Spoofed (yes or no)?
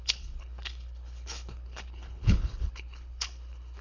yes